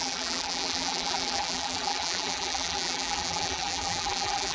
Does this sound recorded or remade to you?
remade